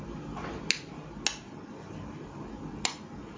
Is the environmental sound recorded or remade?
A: recorded